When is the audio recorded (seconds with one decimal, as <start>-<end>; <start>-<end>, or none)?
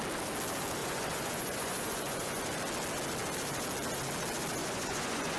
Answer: 0.0-0.8; 2.4-4.6